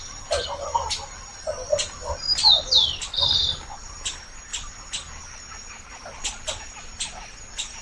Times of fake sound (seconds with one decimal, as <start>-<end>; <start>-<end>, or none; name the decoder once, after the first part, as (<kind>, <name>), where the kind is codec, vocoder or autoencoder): none